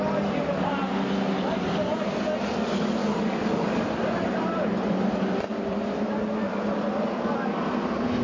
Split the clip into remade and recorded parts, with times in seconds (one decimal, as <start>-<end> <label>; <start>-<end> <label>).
0.0-3.0 recorded; 3.0-8.2 remade